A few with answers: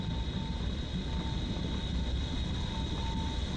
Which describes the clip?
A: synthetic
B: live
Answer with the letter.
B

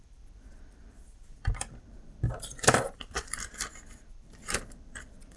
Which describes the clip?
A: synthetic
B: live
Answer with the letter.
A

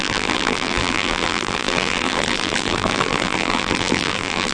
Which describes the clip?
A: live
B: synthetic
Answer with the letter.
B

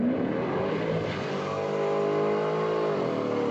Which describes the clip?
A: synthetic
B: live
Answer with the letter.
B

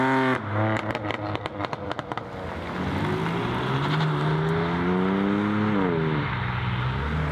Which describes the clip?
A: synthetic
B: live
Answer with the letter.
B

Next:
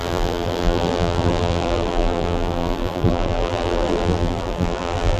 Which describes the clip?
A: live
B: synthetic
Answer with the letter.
B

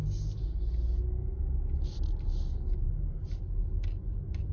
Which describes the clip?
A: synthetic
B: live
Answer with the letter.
B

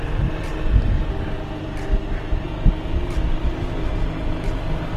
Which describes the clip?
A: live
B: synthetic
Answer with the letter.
A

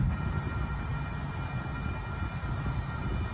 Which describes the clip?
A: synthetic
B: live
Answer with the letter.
B